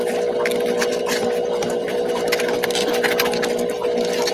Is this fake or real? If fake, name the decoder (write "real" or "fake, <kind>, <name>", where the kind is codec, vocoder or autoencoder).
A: real